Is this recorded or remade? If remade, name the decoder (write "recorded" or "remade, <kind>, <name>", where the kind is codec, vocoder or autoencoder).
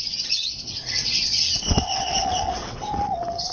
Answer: remade, vocoder, WaveNeXt